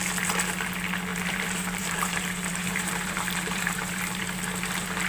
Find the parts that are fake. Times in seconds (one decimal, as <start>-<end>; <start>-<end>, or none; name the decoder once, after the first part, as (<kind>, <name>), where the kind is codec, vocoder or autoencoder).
1.1-4.2 (vocoder, BigVGAN v2)